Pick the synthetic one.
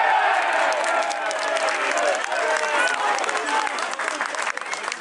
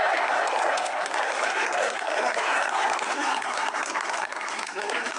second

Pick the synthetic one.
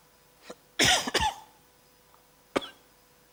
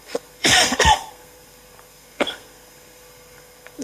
second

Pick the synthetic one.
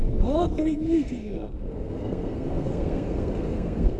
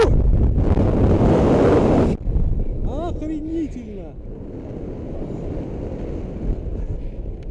first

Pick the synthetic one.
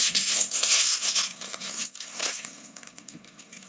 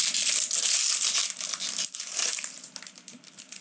first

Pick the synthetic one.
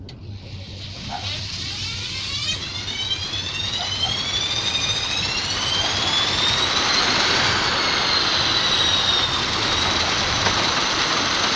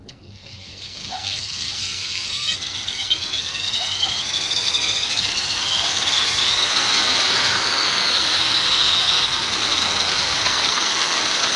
second